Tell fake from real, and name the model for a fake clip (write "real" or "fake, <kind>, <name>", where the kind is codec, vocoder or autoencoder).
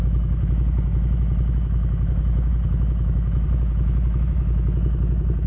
fake, autoencoder, DAC-VAE